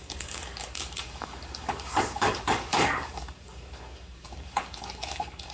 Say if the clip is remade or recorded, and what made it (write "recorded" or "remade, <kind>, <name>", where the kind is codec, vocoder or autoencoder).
remade, codec, DAC